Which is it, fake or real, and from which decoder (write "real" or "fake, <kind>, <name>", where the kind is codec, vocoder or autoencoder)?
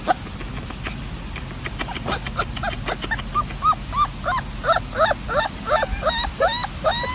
real